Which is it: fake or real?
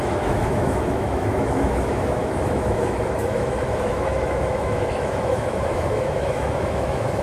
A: fake